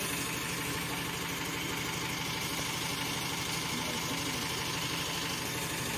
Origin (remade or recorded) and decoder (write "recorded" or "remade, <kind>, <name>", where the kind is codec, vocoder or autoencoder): recorded